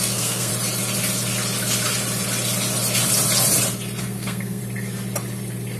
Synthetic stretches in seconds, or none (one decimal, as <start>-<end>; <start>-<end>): 0.0-0.5; 4.0-4.6